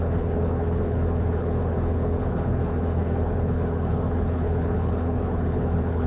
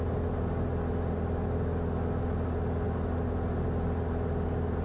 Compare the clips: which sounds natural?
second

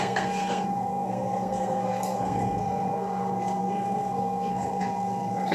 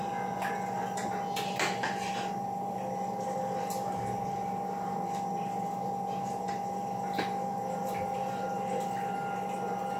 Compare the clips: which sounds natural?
second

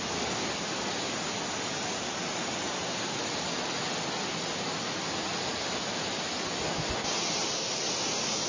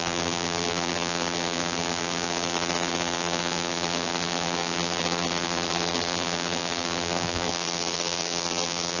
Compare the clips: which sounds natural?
first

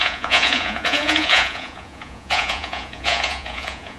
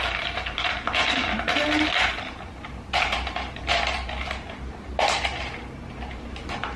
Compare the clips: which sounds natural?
second